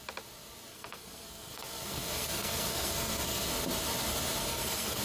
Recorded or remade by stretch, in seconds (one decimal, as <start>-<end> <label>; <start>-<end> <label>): 0.0-0.7 recorded; 0.7-3.5 remade; 3.5-4.4 recorded; 4.4-5.0 remade